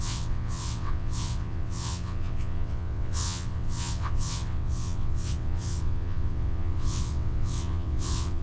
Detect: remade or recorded remade